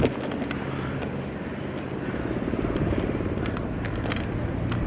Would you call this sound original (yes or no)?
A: yes